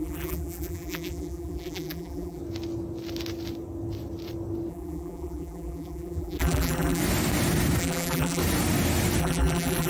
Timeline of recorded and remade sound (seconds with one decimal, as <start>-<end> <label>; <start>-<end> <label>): 0.0-2.4 remade; 2.4-4.7 recorded; 4.7-7.0 remade; 7.0-7.8 recorded; 7.8-8.4 remade; 8.4-9.2 recorded; 9.2-9.9 remade